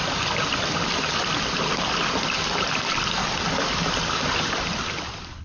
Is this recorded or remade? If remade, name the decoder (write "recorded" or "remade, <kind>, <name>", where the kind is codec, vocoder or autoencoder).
recorded